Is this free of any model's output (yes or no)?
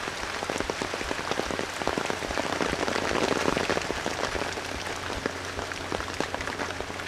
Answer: yes